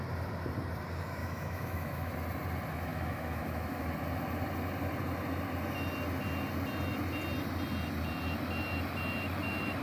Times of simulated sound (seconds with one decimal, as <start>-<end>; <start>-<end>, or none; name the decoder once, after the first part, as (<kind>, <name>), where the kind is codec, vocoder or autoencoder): 1.2-2.1 (autoencoder, DAC-VAE); 2.9-3.9